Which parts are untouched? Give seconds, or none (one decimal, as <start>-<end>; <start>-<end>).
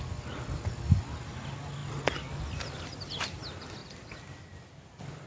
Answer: 0.0-5.3